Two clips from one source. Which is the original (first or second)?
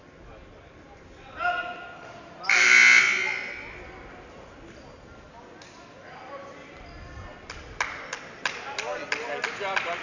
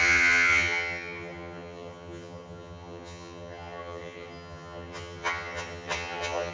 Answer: first